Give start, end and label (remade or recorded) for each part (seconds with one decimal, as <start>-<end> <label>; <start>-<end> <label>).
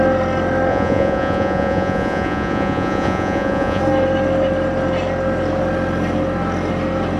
0.0-0.7 recorded; 0.7-3.8 remade; 3.8-7.2 recorded